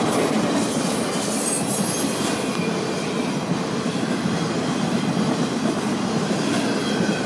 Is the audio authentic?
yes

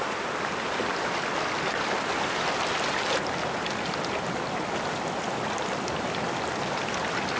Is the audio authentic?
yes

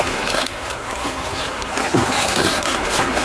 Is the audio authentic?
no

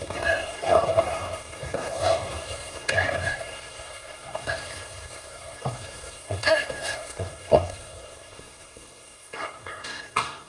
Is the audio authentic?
no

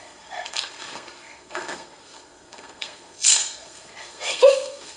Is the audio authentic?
no